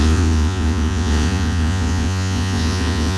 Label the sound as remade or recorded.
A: remade